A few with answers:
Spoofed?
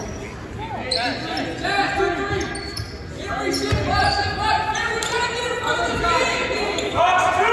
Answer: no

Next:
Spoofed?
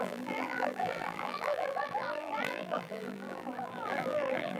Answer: yes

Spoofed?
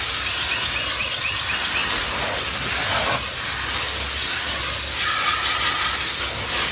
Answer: no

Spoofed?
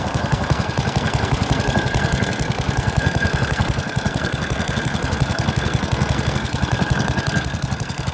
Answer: yes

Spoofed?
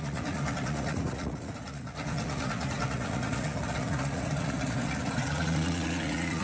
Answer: yes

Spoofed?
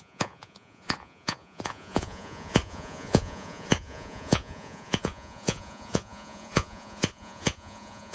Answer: yes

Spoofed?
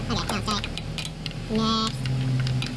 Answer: no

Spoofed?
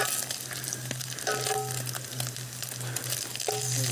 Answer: no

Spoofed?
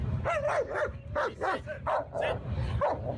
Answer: no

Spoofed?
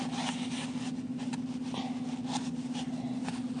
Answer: no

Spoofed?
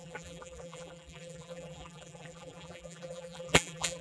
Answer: yes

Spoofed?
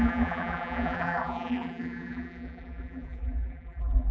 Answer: yes